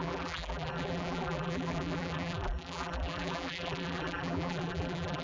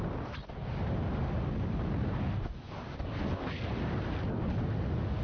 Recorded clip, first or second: second